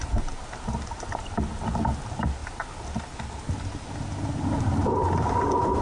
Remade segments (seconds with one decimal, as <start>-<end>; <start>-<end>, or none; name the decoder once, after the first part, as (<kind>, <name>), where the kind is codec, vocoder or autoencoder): 2.4-3.0 (vocoder, BigVGAN v2)